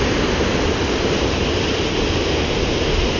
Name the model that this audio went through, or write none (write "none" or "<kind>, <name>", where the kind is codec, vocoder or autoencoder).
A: none